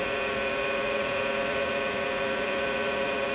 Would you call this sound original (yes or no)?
no